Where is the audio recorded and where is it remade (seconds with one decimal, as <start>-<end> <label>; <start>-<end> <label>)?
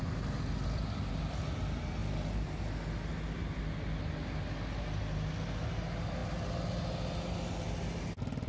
0.0-8.5 recorded